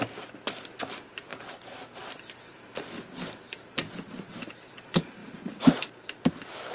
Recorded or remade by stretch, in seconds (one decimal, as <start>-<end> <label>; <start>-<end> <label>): 0.0-6.7 recorded